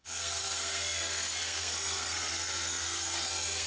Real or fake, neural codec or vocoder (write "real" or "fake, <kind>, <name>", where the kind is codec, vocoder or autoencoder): fake, codec, SNAC